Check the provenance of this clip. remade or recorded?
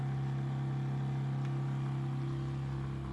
recorded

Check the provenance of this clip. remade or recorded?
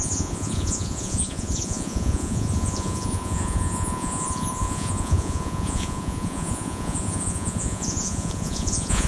remade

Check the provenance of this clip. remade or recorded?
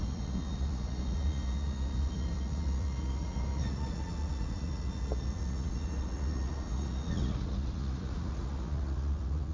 remade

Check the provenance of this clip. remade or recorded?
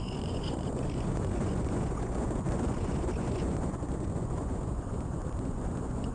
remade